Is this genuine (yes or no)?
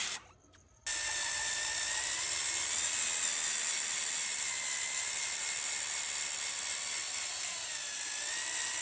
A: yes